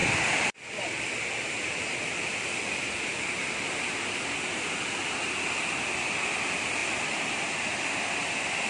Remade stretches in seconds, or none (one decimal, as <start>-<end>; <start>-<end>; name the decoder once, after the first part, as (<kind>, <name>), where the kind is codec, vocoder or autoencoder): 0.0-4.1 (vocoder, BigVGAN v2)